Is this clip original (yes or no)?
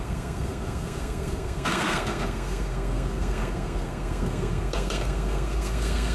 no